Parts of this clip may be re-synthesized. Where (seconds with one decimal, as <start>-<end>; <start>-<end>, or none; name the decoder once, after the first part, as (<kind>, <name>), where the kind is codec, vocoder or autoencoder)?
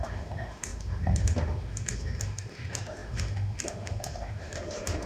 0.0-5.1 (autoencoder, DAC-VAE)